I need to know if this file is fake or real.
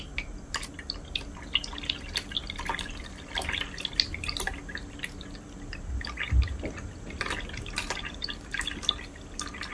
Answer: real